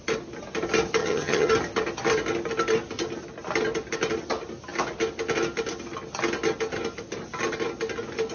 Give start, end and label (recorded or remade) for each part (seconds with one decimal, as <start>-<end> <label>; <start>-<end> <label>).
0.0-1.0 recorded; 1.0-1.5 remade; 1.5-8.3 recorded